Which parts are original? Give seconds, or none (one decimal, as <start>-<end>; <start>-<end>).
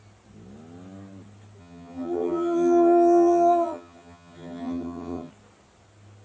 0.0-1.6; 5.3-6.2